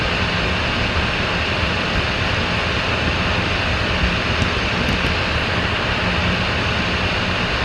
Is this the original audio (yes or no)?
yes